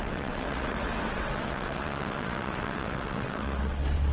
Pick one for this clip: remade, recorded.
remade